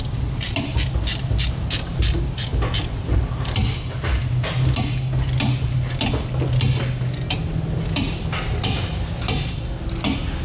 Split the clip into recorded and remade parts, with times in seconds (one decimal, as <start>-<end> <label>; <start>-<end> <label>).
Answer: 0.0-10.4 recorded